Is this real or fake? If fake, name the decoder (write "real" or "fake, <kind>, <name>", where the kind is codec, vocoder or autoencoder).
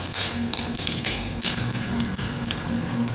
fake, codec, SNAC